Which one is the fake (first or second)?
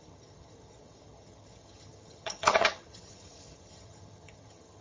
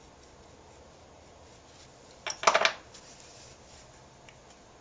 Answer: first